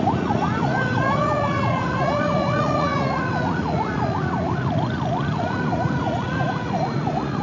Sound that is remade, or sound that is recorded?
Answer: remade